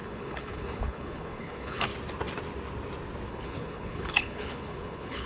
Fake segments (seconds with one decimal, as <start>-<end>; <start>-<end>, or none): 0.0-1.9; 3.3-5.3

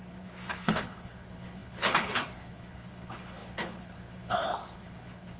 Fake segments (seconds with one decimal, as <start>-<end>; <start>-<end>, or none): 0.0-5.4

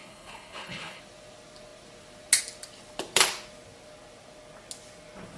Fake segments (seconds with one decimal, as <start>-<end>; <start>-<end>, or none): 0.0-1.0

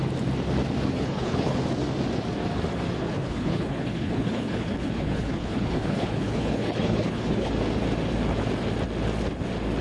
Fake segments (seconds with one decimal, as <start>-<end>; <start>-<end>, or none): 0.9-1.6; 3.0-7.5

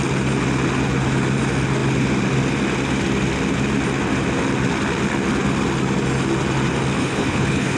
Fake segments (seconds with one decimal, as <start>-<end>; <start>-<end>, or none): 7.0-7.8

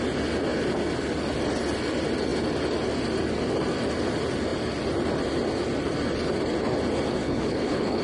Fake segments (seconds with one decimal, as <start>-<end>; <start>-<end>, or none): 7.2-8.0